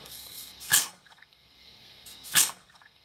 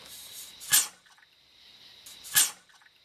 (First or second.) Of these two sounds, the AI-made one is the first